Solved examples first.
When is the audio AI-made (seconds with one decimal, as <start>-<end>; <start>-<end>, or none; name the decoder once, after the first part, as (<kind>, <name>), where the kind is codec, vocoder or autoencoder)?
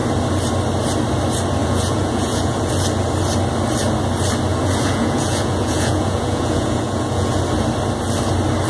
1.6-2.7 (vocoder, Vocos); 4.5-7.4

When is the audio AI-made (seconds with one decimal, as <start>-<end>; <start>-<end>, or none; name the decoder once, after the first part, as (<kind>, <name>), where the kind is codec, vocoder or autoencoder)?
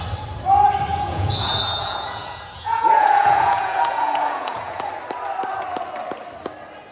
0.9-4.9 (vocoder, Vocos)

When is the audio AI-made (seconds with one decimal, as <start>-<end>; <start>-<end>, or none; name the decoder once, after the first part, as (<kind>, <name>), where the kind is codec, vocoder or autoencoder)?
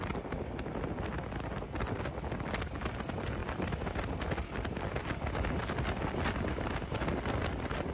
none